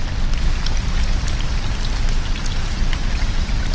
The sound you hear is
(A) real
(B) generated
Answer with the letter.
A